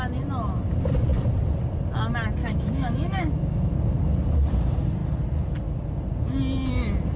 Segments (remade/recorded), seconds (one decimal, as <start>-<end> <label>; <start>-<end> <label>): 0.0-2.4 recorded; 2.4-3.7 remade; 3.7-7.2 recorded